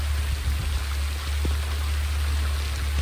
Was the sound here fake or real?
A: real